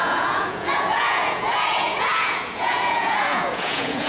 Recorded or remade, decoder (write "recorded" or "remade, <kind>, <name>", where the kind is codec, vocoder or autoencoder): remade, vocoder, Vocos